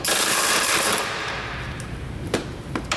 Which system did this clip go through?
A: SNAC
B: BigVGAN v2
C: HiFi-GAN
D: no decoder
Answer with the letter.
B